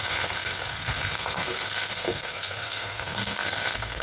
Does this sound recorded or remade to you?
remade